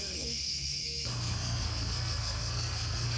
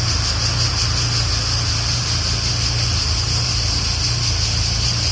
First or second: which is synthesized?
first